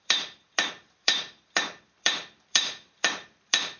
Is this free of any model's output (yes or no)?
no